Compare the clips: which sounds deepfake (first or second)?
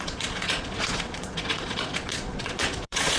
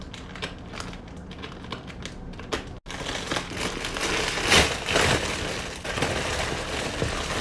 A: first